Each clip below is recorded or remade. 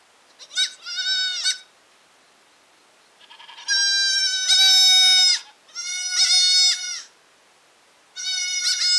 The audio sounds recorded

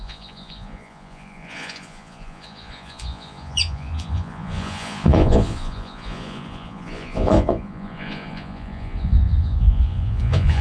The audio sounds remade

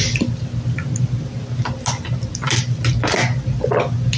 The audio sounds recorded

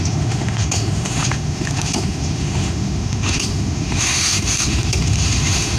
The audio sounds remade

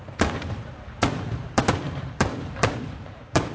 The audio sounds remade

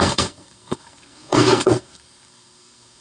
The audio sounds remade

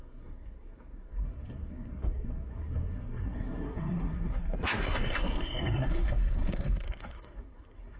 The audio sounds remade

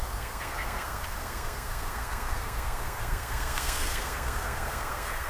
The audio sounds remade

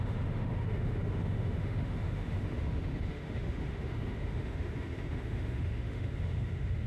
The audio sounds remade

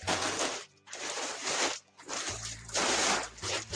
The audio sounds remade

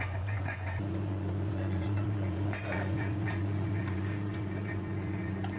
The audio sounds remade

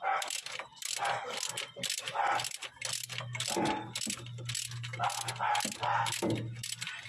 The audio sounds recorded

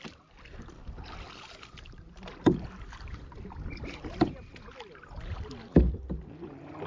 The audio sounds recorded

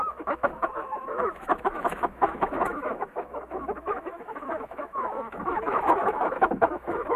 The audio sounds remade